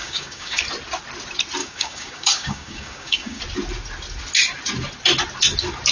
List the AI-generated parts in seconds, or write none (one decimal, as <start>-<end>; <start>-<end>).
0.0-0.6; 1.6-3.4